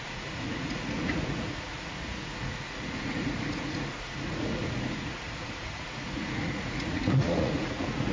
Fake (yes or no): yes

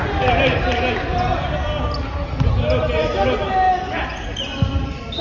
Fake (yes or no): no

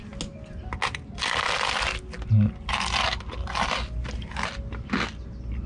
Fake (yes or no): no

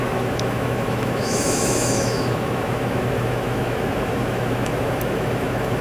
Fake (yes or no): yes